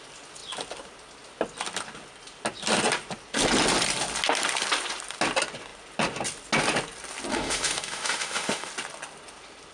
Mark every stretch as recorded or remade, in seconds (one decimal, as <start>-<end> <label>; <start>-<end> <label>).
0.0-7.3 recorded; 7.3-8.7 remade; 8.7-9.7 recorded

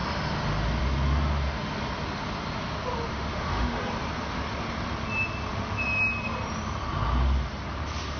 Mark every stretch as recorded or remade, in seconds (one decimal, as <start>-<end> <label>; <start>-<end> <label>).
0.0-3.1 recorded; 3.1-3.8 remade; 3.8-8.2 recorded

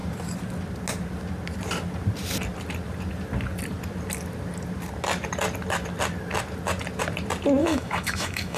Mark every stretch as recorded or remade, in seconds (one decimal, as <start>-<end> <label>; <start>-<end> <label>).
0.0-7.6 recorded; 7.6-8.6 remade

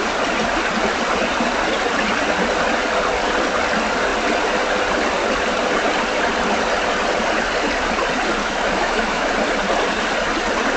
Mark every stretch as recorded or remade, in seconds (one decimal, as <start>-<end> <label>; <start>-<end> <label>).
0.0-8.4 recorded; 8.4-9.3 remade; 9.3-10.8 recorded

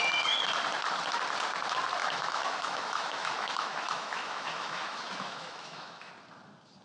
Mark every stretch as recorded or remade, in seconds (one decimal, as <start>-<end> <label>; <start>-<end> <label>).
0.0-2.0 recorded; 2.0-6.1 remade; 6.1-6.8 recorded

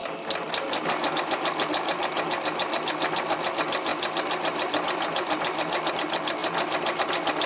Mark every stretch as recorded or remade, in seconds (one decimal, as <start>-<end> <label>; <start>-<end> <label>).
0.0-7.5 recorded